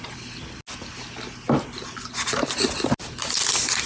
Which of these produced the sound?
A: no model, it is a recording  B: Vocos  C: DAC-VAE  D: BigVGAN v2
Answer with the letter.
A